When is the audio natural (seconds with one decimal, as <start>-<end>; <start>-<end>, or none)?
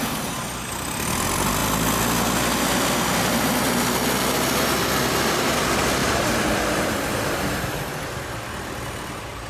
0.0-6.0; 7.9-9.5